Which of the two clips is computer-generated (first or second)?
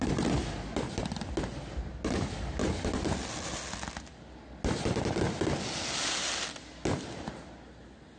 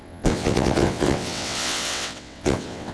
second